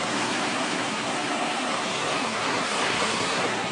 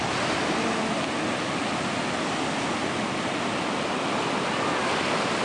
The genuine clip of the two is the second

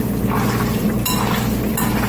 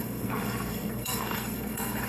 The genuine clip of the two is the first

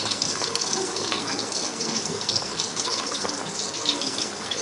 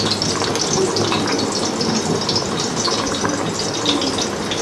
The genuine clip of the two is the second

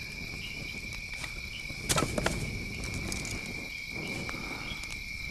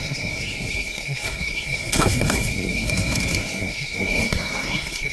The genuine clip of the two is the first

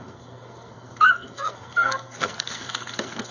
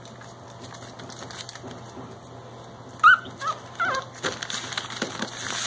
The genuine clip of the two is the second